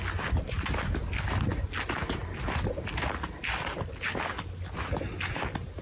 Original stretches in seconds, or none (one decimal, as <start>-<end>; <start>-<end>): 0.0-5.8